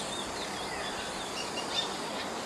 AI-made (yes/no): no